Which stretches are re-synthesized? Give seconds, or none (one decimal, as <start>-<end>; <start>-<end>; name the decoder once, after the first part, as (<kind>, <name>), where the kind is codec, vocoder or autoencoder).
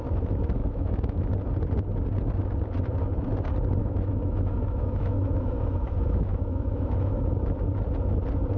0.6-1.3 (autoencoder, DAC-VAE); 3.8-7.3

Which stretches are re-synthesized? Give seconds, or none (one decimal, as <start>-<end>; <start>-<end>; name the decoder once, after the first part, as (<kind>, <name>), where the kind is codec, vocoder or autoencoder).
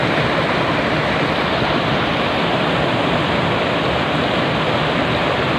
none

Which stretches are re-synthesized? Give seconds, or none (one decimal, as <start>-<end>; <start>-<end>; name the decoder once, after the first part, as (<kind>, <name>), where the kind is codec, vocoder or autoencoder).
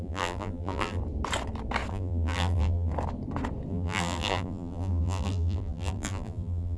0.0-1.0 (vocoder, BigVGAN v2); 1.9-2.9; 3.7-6.8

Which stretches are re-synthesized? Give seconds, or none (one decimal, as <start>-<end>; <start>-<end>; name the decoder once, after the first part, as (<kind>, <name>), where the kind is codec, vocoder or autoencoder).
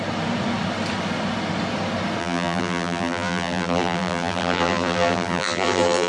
2.2-6.1 (vocoder, BigVGAN v2)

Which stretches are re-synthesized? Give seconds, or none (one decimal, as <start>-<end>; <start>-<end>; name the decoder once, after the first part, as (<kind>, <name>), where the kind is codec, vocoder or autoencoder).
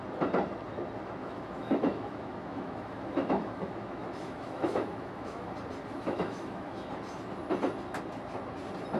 1.2-5.5 (autoencoder, DAC-VAE); 5.9-6.9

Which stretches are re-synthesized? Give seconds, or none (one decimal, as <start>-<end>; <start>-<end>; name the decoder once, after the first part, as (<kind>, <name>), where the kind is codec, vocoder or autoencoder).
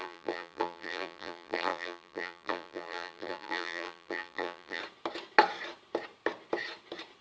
0.0-4.8 (vocoder, BigVGAN v2)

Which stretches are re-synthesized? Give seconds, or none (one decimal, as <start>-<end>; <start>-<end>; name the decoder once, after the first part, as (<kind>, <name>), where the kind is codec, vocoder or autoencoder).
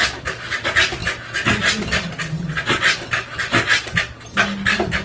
none